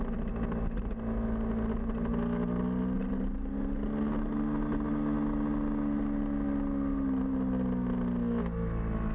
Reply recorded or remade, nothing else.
recorded